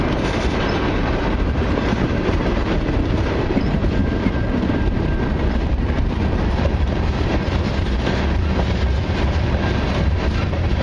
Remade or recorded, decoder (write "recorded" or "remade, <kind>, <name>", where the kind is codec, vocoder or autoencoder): remade, vocoder, BigVGAN v2